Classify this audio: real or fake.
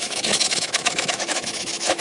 fake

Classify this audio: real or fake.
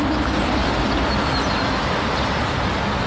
real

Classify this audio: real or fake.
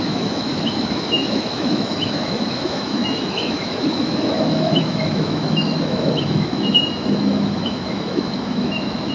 fake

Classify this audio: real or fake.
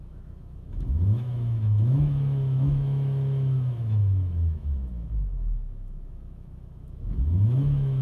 fake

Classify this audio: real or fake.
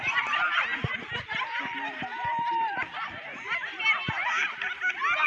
real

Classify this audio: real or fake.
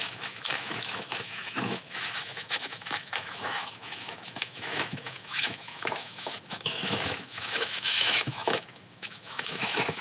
fake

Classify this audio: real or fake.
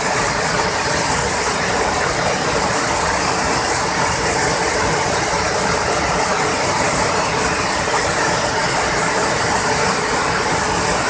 real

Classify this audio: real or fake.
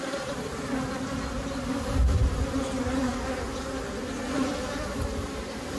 real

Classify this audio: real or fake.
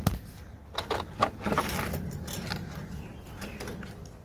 real